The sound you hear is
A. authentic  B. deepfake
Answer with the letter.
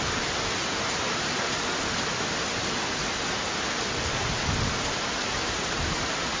A